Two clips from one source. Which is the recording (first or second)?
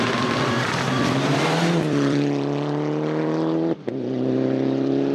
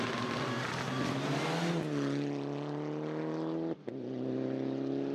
second